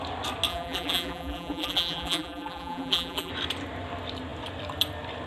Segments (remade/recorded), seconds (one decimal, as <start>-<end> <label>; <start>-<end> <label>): 0.0-0.5 recorded; 0.5-3.3 remade; 3.3-5.3 recorded